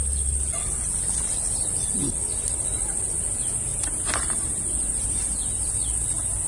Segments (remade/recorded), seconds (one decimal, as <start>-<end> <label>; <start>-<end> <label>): 0.0-3.7 recorded; 3.7-5.8 remade; 5.8-6.5 recorded